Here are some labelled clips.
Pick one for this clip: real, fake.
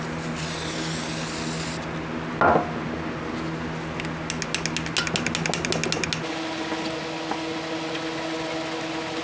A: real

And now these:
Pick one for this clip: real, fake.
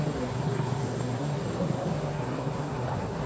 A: fake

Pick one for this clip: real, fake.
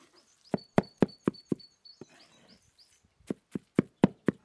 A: real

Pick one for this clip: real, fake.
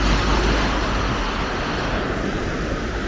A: real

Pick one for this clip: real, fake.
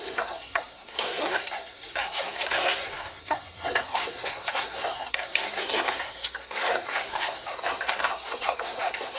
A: fake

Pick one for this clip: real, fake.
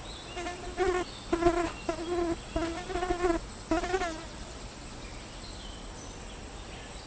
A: real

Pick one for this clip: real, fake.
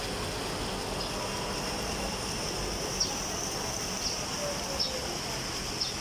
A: real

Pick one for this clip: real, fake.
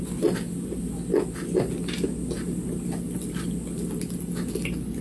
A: real